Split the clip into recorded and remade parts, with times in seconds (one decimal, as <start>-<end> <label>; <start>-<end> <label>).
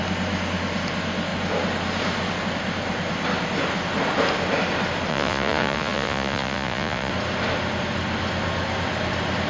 0.0-5.1 recorded; 5.1-7.1 remade; 7.1-9.5 recorded